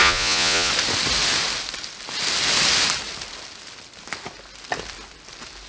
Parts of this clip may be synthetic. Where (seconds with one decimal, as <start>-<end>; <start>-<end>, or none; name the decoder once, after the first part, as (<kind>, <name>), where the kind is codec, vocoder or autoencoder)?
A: 0.0-0.7 (vocoder, Vocos)